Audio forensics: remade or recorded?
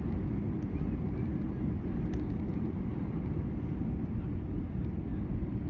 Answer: recorded